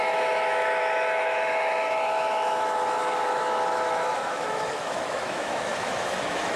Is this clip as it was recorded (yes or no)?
no